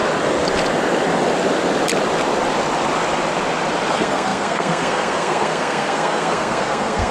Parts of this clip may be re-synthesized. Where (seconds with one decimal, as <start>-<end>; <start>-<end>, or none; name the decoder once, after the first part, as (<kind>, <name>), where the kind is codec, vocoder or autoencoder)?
3.9-7.1 (codec, SNAC)